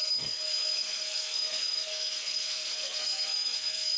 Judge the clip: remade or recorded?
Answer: remade